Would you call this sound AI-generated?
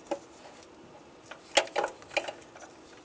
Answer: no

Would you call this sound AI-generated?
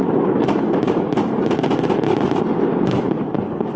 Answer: no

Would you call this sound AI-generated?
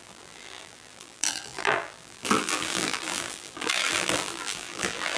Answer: yes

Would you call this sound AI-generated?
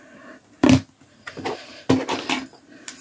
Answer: no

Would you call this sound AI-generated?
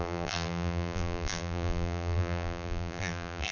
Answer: yes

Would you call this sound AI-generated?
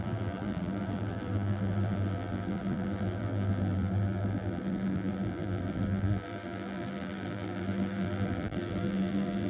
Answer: yes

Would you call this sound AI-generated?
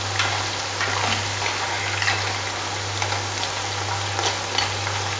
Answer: no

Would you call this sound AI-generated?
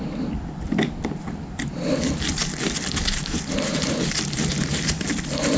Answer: yes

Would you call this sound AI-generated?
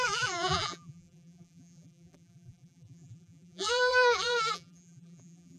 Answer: yes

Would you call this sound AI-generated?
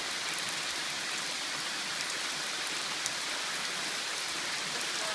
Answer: yes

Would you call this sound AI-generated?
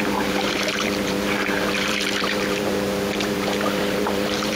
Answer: yes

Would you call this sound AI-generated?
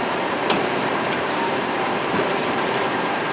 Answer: yes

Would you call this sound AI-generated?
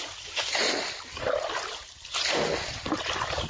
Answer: no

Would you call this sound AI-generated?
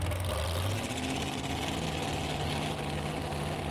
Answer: no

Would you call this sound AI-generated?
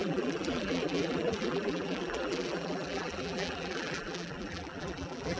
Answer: yes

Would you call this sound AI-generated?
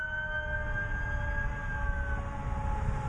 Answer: no